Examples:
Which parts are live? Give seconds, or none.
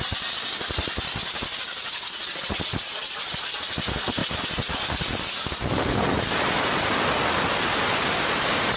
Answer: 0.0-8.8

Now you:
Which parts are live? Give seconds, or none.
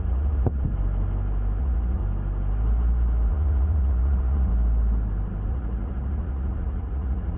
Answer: 0.7-1.6; 2.0-3.3; 4.5-5.5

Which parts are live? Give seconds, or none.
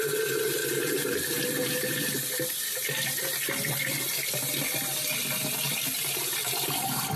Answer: 0.0-7.2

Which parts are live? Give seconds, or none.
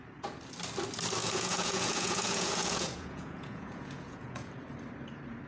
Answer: 0.0-1.2; 4.5-5.5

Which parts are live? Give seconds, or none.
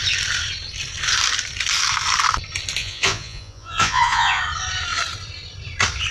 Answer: 0.0-2.8; 4.4-6.1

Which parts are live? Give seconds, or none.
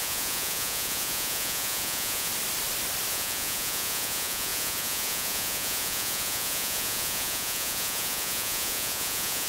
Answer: 2.3-3.1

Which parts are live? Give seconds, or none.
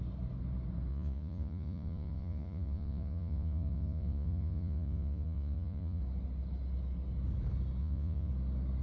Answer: 0.0-0.9; 6.0-7.8; 8.3-8.8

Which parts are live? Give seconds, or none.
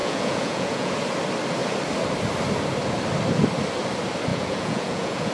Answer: 0.9-4.3